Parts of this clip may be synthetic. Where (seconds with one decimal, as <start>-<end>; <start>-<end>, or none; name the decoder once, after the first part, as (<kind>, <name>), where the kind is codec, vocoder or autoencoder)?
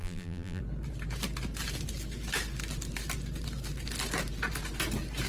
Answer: 0.0-0.6 (vocoder, BigVGAN v2)